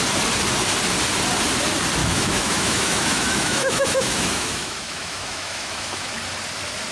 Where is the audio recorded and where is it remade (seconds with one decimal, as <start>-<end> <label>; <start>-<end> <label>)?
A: 0.0-2.0 recorded; 2.0-6.1 remade; 6.1-6.9 recorded

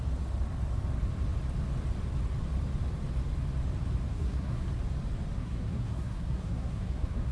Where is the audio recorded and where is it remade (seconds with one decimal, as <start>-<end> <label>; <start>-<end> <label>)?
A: 0.0-4.1 recorded; 4.1-4.7 remade; 4.7-5.4 recorded; 5.4-7.3 remade

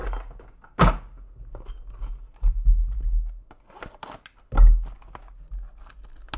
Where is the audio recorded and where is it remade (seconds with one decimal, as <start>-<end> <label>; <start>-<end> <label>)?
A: 0.0-6.4 recorded

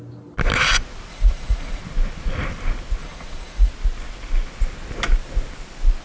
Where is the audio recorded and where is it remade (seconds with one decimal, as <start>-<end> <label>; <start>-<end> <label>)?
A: 0.0-1.1 recorded; 1.1-1.8 remade; 1.8-3.0 recorded; 3.0-3.7 remade; 3.7-6.0 recorded

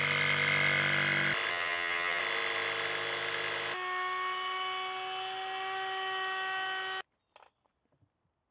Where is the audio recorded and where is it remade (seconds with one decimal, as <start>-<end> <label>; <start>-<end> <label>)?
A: 0.0-1.5 recorded; 1.5-2.2 remade; 2.2-8.5 recorded

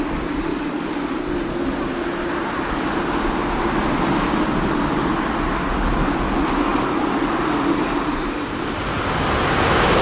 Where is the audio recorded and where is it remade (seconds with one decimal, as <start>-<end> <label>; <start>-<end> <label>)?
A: 0.0-0.5 recorded; 0.5-1.2 remade; 1.2-6.7 recorded; 6.7-7.3 remade; 7.3-10.0 recorded

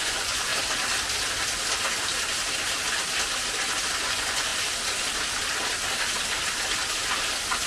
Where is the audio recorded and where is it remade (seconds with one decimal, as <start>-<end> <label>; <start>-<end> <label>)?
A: 0.0-0.5 remade; 0.5-4.0 recorded; 4.0-4.5 remade; 4.5-7.7 recorded